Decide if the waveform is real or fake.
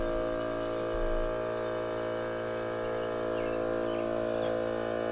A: real